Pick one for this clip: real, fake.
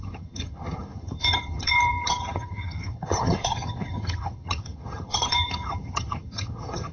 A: fake